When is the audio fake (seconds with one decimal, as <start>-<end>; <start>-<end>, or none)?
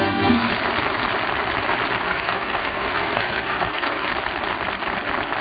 0.0-0.5; 2.0-4.1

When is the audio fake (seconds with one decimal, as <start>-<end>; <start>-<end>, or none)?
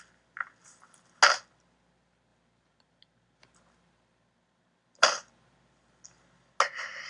none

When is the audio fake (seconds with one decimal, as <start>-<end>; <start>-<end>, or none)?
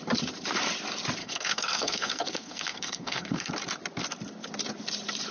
1.2-3.5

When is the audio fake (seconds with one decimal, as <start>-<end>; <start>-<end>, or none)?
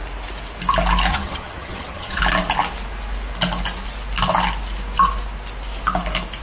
1.1-2.2